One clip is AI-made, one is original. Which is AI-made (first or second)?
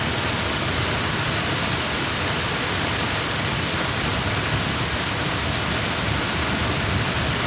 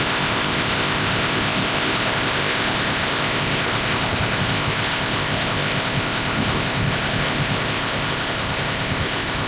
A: second